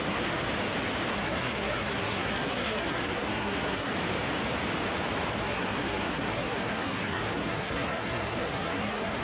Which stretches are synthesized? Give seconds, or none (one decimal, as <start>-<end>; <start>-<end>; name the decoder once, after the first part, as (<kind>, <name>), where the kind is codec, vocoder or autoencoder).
0.0-0.5 (codec, SNAC); 1.1-3.9; 5.4-9.2